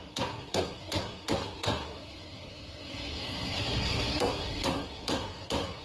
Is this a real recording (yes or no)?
no